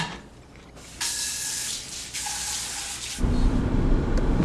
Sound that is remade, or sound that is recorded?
recorded